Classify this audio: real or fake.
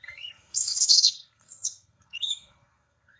fake